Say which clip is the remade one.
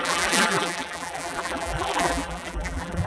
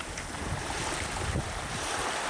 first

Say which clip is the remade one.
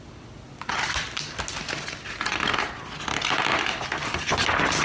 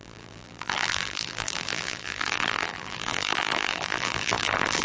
second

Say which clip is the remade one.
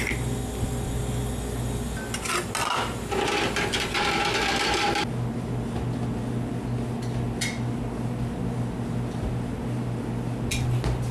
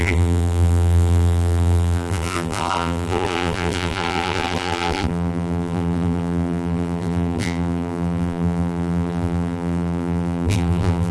second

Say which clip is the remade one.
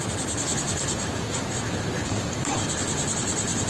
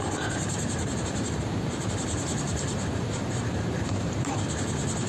second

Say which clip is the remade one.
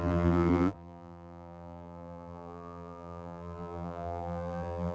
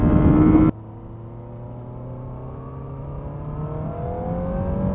first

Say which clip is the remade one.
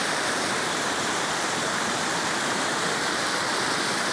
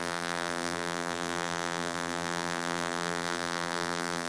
second